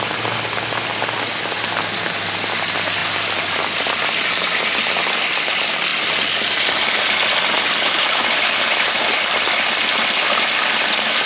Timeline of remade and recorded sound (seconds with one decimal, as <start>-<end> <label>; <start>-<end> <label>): 0.0-11.3 recorded